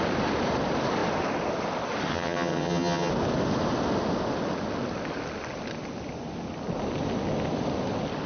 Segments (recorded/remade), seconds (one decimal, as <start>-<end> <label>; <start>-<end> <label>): 0.0-2.1 recorded; 2.1-3.1 remade; 3.1-8.3 recorded

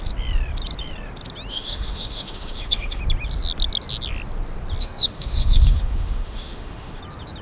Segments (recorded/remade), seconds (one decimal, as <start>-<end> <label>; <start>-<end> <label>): 0.0-1.5 recorded; 1.5-3.0 remade; 3.0-4.8 recorded; 4.8-7.0 remade; 7.0-7.4 recorded

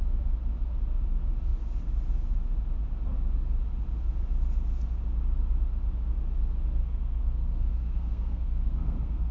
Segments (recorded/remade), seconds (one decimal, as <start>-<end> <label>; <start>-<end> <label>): 0.0-6.8 recorded; 6.8-9.3 remade